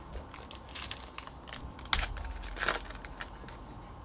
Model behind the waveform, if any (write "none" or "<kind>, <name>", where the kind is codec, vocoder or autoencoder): none